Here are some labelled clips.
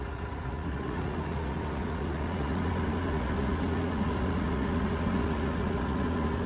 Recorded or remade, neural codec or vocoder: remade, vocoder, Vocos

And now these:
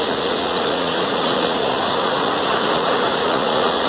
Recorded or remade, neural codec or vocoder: remade, vocoder, Vocos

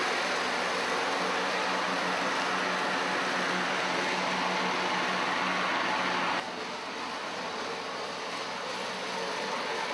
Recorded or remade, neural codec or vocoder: recorded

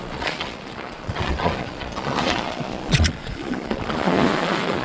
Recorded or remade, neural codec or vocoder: remade, vocoder, Vocos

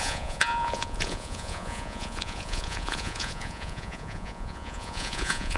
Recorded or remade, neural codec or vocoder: remade, vocoder, Vocos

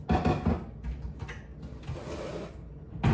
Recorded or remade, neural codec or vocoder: recorded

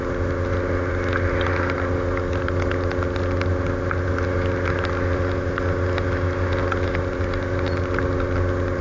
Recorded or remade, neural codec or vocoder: recorded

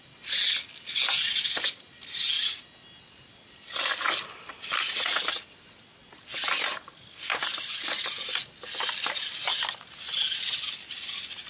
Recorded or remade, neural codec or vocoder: recorded